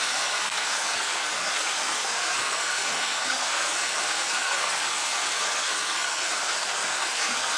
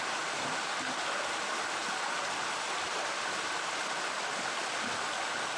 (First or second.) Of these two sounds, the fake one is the first